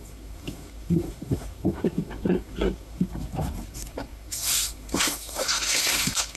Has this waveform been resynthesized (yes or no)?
yes